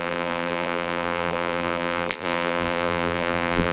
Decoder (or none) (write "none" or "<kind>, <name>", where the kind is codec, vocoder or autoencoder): vocoder, BigVGAN v2